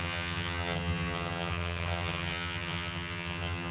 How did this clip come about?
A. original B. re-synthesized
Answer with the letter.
B